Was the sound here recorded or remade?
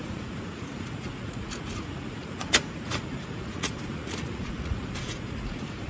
remade